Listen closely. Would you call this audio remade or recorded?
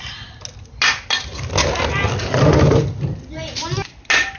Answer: recorded